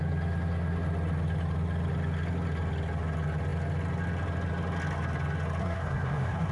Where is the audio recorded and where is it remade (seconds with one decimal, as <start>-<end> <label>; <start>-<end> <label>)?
0.0-5.6 recorded; 5.6-6.5 remade